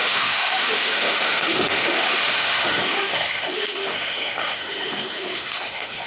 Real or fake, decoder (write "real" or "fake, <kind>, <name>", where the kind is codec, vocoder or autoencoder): fake, autoencoder, DAC-VAE